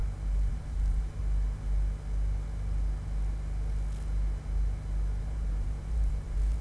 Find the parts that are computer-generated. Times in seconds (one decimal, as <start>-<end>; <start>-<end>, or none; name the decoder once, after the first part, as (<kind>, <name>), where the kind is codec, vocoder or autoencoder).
0.0-1.2 (vocoder, BigVGAN v2); 5.2-6.6